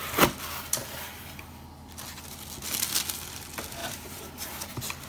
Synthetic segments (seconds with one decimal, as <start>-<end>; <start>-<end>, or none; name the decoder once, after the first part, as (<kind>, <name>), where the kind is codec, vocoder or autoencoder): 3.8-4.6 (vocoder, BigVGAN v2)